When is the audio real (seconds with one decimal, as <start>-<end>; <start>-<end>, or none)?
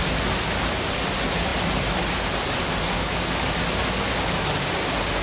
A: 0.0-5.2